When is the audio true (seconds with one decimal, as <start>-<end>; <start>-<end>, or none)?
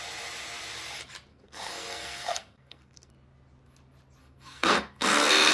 0.0-1.3; 3.1-4.2